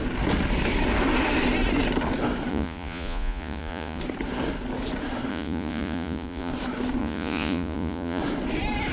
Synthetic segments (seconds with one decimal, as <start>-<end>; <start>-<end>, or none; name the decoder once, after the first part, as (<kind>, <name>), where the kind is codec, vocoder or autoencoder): 2.5-4.0 (vocoder, Vocos); 5.3-6.5; 7.0-8.2